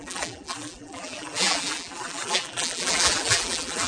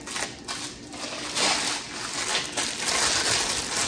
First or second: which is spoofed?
first